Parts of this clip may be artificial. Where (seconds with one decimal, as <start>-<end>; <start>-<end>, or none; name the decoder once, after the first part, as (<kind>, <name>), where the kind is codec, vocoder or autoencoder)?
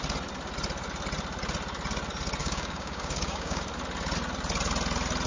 2.4-3.6 (codec, DAC)